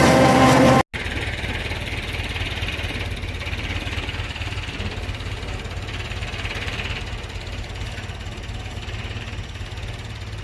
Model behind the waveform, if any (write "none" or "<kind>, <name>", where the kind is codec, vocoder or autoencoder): none